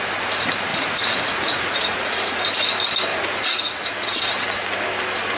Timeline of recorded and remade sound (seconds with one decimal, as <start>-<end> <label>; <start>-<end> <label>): 0.0-0.7 recorded; 0.7-2.4 remade; 2.4-3.1 recorded; 3.1-4.2 remade; 4.2-5.4 recorded